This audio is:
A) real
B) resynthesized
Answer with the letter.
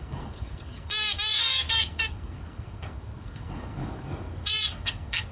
B